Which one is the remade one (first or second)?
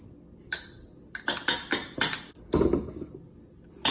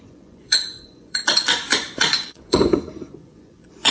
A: second